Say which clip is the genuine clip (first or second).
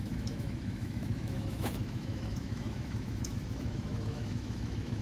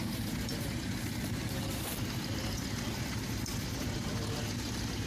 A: second